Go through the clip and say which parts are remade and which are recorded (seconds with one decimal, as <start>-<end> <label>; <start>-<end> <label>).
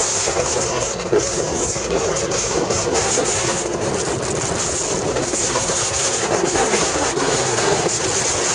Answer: 0.0-3.9 remade; 3.9-5.1 recorded; 5.1-8.0 remade; 8.0-8.5 recorded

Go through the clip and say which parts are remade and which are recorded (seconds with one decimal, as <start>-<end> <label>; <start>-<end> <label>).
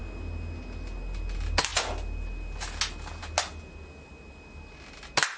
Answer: 0.0-5.4 recorded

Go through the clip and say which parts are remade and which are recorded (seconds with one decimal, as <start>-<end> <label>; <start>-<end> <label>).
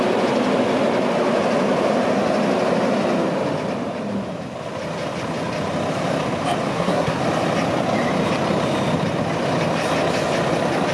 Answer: 0.0-6.7 recorded; 6.7-7.2 remade; 7.2-10.9 recorded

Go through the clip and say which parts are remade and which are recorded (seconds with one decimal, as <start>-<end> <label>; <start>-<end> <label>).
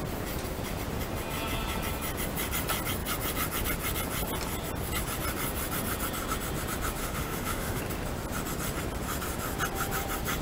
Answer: 0.0-7.0 recorded; 7.0-7.8 remade; 7.8-10.4 recorded